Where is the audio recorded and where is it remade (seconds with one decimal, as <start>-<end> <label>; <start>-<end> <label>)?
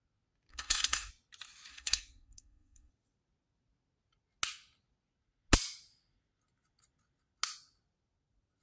0.0-0.5 recorded; 0.5-1.1 remade; 1.1-1.7 recorded; 1.7-2.9 remade; 2.9-8.6 recorded